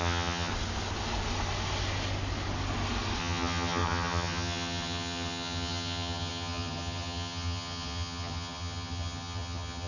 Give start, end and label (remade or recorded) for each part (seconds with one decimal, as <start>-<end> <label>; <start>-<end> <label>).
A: 0.0-0.5 remade; 0.5-3.2 recorded; 3.2-9.9 remade